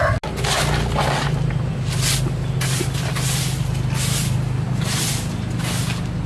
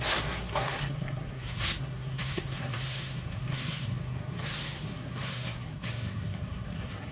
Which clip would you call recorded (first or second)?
first